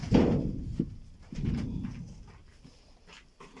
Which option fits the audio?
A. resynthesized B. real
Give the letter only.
B